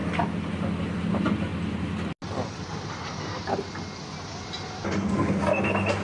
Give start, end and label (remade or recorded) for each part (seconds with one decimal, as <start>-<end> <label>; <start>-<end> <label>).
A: 0.0-6.0 recorded